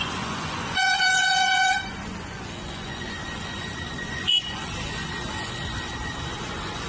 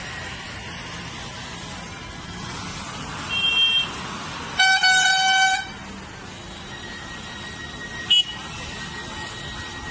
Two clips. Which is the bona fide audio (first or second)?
second